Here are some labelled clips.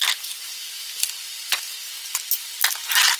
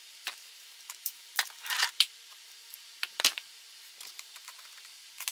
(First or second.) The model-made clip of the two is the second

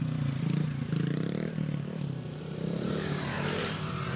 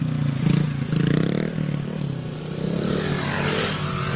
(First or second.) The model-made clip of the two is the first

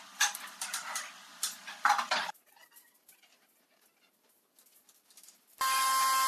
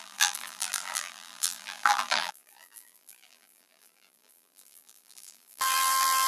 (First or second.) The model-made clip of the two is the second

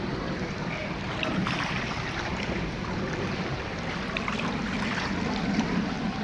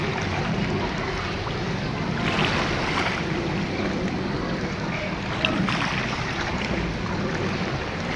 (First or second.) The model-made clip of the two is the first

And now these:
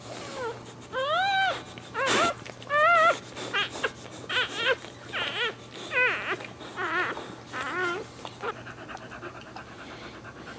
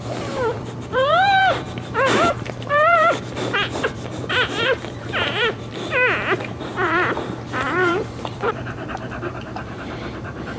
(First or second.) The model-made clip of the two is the second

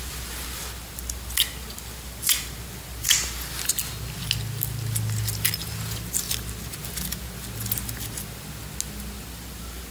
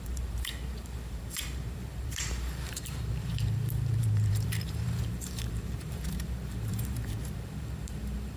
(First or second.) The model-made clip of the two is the second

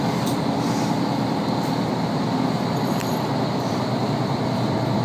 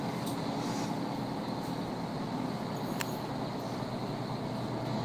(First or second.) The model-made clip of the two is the first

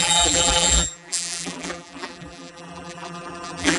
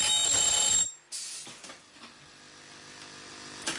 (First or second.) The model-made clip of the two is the first